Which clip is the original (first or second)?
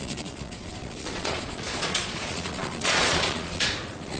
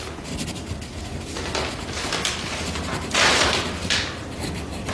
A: second